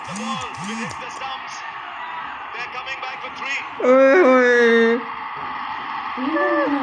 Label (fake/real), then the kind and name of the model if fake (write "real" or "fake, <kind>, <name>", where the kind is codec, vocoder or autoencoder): real